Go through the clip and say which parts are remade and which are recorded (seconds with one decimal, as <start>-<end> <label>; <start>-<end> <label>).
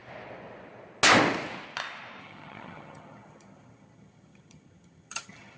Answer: 0.0-2.2 recorded; 2.2-5.6 remade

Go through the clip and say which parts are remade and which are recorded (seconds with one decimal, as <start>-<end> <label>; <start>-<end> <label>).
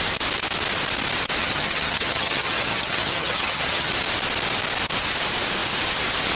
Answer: 0.0-1.4 recorded; 1.4-3.9 remade; 3.9-6.4 recorded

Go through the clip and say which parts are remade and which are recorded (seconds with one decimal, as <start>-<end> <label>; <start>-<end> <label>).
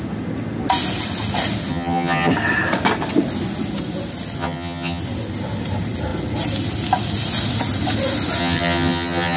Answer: 0.0-1.7 recorded; 1.7-2.3 remade; 2.3-4.4 recorded; 4.4-5.0 remade; 5.0-8.4 recorded; 8.4-9.4 remade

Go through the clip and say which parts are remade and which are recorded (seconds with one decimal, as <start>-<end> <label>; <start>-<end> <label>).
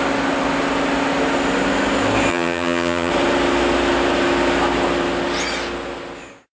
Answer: 0.0-2.3 recorded; 2.3-3.1 remade; 3.1-6.6 recorded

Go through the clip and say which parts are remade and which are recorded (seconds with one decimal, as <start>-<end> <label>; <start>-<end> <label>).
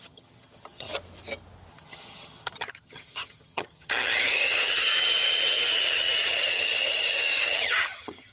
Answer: 0.0-0.9 remade; 0.9-1.7 recorded; 1.7-8.3 remade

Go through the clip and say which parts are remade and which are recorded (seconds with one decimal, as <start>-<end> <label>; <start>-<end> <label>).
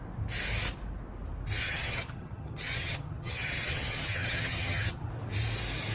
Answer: 0.0-1.6 recorded; 1.6-5.1 remade; 5.1-5.9 recorded